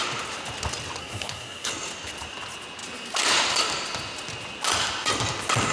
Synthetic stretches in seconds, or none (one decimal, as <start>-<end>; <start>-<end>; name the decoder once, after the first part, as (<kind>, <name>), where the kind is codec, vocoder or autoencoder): 1.0-1.7 (codec, SNAC)